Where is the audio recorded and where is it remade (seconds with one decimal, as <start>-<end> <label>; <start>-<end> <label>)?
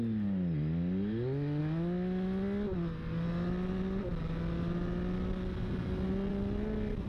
0.0-7.1 recorded